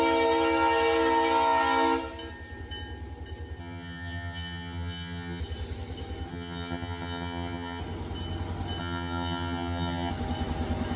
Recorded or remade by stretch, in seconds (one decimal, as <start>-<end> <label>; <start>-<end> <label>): 0.0-3.6 recorded; 3.6-5.4 remade; 5.4-6.3 recorded; 6.3-7.8 remade; 7.8-8.8 recorded; 8.8-10.1 remade; 10.1-11.0 recorded